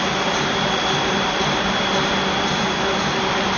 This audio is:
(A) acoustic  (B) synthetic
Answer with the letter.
A